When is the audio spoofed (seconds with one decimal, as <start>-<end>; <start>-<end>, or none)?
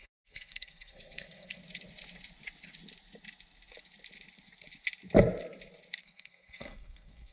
0.0-1.6; 6.0-7.3